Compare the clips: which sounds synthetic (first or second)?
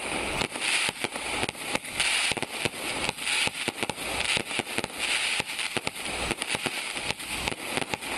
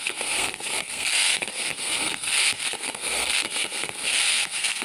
second